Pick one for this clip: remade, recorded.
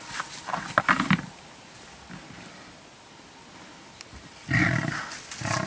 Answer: recorded